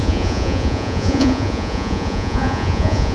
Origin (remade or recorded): remade